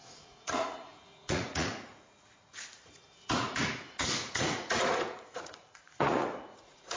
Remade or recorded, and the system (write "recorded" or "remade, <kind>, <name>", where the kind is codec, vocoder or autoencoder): remade, vocoder, Vocos